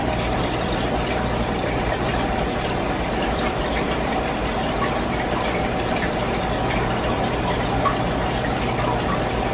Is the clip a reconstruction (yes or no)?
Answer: no